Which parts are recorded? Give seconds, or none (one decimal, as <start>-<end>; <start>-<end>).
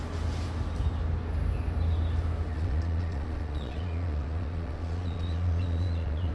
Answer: 0.0-2.5